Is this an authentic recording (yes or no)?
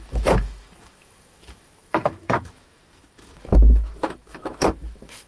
no